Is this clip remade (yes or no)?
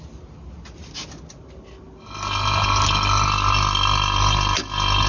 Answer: no